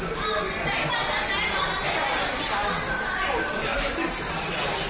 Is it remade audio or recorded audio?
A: recorded